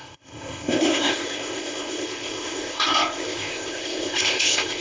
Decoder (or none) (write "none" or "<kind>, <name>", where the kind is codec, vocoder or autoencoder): codec, ZipCodec